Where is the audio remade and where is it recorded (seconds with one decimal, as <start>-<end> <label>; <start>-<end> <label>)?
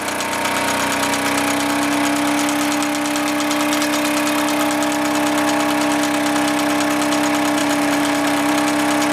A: 0.0-7.6 recorded; 7.6-8.5 remade; 8.5-9.1 recorded